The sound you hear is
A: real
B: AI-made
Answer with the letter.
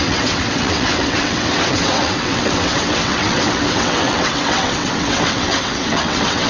B